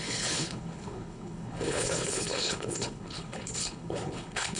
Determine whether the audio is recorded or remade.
remade